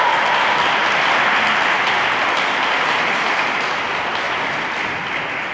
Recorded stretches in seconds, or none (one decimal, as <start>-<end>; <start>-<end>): 0.0-5.5